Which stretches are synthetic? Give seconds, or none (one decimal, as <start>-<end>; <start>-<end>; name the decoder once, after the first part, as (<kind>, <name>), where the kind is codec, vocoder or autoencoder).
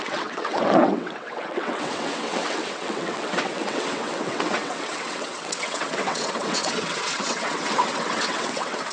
0.0-8.9 (vocoder, WaveNeXt)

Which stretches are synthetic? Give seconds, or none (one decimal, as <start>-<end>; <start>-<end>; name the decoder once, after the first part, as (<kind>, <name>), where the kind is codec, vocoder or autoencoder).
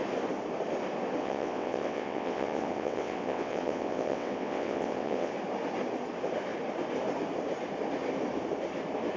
1.2-5.3 (vocoder, WaveNeXt)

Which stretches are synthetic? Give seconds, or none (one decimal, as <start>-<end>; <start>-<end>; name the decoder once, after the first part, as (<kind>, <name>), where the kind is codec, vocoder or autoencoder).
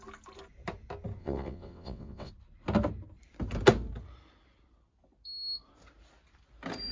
1.2-2.3 (vocoder, WaveNeXt)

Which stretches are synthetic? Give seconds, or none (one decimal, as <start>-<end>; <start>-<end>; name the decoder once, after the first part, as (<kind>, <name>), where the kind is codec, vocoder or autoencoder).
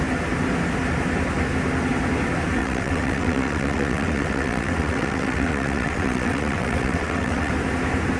2.6-7.5 (vocoder, WaveNeXt)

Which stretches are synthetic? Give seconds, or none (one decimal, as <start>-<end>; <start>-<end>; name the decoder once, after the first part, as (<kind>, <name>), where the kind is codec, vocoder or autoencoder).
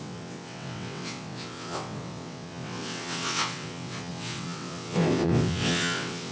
0.0-6.3 (vocoder, WaveNeXt)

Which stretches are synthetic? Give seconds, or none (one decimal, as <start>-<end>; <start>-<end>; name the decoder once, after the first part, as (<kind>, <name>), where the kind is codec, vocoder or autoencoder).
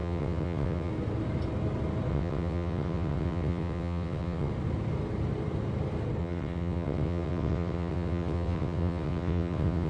0.0-0.9 (vocoder, WaveNeXt); 2.1-4.5; 6.2-9.9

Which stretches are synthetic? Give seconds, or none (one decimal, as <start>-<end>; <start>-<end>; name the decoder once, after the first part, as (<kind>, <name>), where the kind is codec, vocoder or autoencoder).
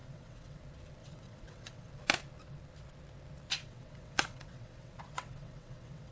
0.0-0.6 (vocoder, WaveNeXt); 1.0-1.9; 3.6-6.1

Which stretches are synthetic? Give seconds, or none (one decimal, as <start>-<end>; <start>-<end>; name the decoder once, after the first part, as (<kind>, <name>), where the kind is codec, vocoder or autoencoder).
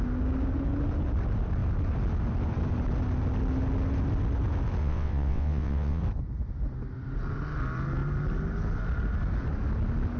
4.8-6.0 (vocoder, WaveNeXt)